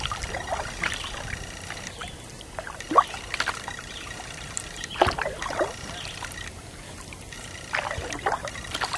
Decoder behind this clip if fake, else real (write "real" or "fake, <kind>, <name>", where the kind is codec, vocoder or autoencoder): fake, vocoder, BigVGAN v2